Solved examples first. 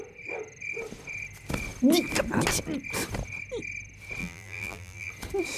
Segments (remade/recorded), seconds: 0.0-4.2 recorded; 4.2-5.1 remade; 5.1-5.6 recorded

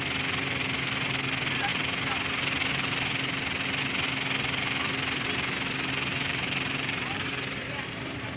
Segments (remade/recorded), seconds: 0.0-6.1 recorded; 6.1-8.4 remade

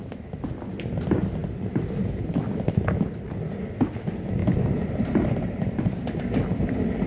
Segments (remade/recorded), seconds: 0.0-1.4 recorded; 1.4-2.7 remade; 2.7-4.4 recorded; 4.4-6.2 remade; 6.2-7.1 recorded